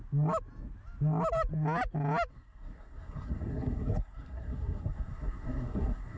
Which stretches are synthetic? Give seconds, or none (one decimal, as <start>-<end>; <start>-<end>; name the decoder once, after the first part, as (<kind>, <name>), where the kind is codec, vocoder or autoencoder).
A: 2.3-6.2 (codec, SNAC)